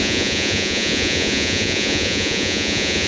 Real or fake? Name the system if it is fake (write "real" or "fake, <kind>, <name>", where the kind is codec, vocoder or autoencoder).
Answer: fake, vocoder, Vocos